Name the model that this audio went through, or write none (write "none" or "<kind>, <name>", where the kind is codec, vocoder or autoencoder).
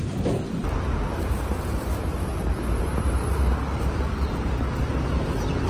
vocoder, BigVGAN v2